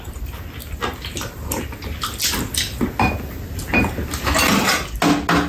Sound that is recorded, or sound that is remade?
recorded